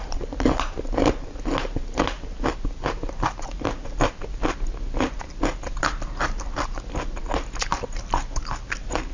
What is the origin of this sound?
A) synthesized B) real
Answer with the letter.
B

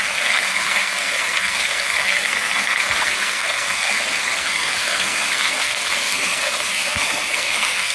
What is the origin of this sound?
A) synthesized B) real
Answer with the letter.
A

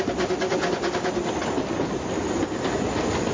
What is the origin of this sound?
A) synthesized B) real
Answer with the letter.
B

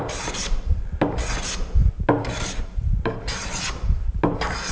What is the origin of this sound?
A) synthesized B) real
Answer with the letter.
B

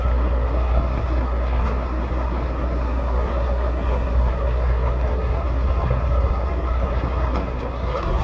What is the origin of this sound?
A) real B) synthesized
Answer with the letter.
B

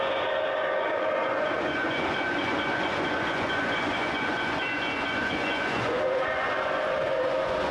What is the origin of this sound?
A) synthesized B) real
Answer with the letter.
A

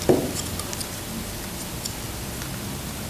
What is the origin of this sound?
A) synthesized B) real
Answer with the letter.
B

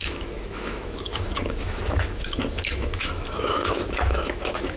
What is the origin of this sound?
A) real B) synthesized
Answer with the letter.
B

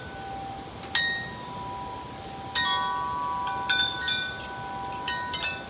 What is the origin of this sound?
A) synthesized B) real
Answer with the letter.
B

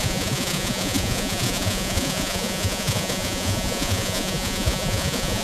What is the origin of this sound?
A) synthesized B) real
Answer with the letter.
A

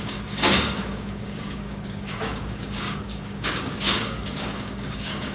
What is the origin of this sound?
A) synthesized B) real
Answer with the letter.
A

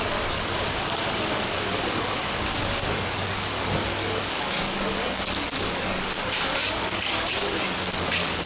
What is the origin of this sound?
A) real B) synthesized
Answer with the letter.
B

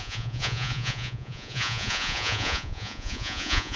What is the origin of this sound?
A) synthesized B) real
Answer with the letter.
A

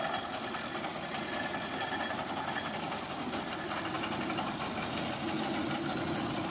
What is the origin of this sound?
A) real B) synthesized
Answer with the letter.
A